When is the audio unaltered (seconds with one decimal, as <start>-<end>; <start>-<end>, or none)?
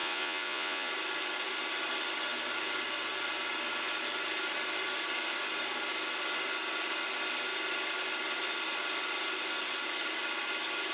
0.9-10.9